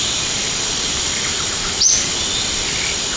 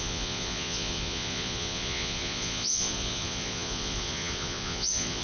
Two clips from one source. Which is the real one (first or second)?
first